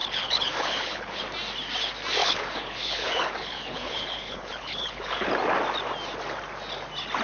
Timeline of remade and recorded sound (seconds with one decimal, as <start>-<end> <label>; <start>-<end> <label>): 0.0-1.2 remade; 1.2-2.2 recorded; 2.2-5.3 remade; 5.3-7.2 recorded